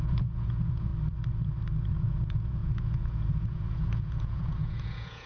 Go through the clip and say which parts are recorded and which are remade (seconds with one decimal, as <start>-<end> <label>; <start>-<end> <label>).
0.0-0.9 remade; 0.9-2.0 recorded; 2.0-5.3 remade